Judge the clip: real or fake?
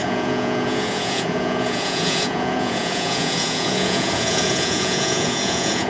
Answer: fake